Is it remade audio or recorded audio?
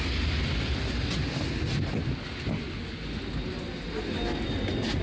recorded